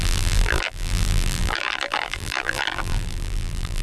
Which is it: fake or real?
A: fake